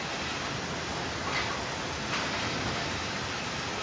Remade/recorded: recorded